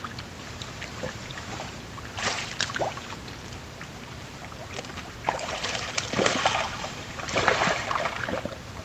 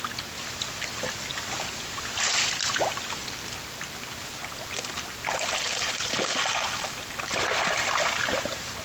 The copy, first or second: first